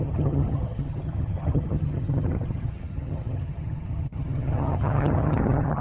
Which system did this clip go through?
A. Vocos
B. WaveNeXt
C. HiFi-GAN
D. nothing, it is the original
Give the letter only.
C